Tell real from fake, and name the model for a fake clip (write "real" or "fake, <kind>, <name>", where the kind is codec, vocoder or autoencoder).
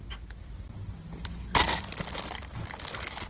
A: real